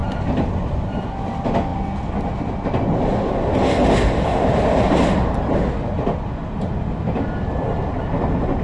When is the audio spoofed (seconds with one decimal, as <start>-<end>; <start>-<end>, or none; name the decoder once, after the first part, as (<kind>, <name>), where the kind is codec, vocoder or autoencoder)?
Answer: none